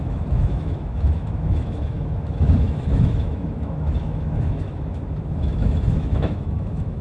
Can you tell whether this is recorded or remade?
remade